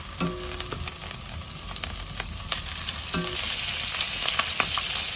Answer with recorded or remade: recorded